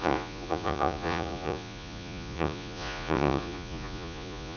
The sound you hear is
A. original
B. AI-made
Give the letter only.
B